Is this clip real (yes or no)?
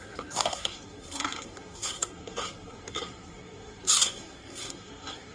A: no